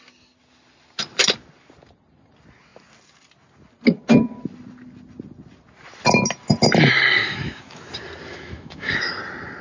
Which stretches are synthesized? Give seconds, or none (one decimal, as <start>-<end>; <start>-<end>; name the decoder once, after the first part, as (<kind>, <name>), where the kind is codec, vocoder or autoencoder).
7.2-7.9 (autoencoder, DAC-VAE); 8.3-9.2